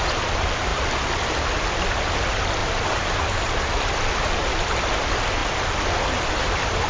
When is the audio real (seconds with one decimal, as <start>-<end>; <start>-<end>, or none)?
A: 0.0-2.6; 3.8-6.9

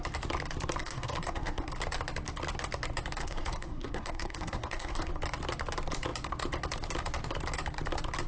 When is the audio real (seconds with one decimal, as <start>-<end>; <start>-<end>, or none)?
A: 0.0-0.8; 1.7-3.2; 5.1-8.3